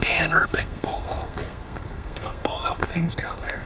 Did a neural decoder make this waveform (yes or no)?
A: yes